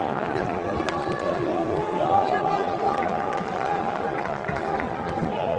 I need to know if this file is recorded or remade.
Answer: remade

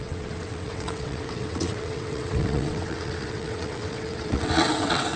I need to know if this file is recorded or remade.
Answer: remade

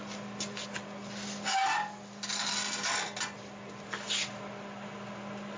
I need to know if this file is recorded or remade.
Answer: recorded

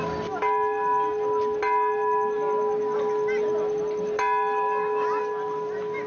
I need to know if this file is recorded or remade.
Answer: recorded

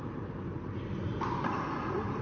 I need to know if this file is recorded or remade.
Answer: recorded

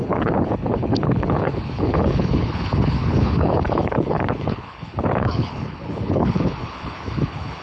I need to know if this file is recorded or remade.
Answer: remade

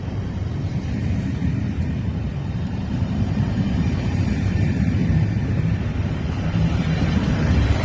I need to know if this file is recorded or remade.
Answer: remade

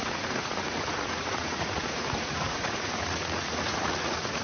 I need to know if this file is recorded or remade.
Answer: remade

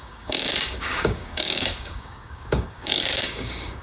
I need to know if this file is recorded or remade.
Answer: remade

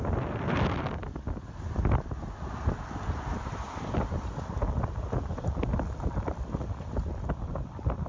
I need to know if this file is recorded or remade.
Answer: remade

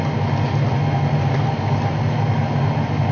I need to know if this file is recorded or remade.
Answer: recorded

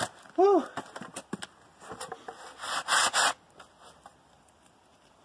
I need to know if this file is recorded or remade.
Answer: recorded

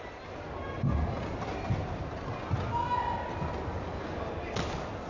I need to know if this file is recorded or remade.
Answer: recorded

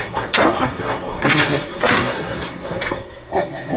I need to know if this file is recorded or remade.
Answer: remade